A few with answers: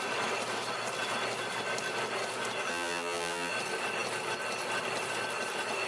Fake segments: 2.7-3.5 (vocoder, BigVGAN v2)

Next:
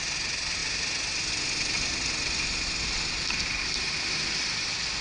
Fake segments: none

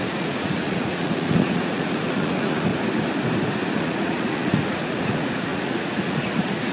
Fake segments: 0.0-2.7 (vocoder, Vocos); 3.8-6.7

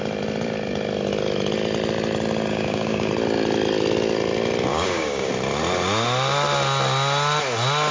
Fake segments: 2.5-3.1 (codec, DAC); 4.7-5.3

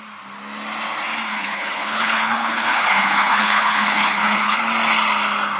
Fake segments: 1.3-4.6 (codec, HILCodec)